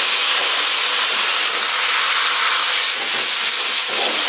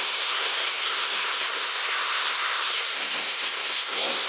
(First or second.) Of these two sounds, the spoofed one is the second